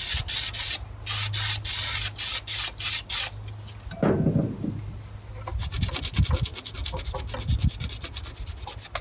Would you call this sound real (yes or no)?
yes